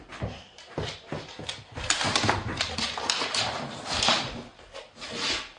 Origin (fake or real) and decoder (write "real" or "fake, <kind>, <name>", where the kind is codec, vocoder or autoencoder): real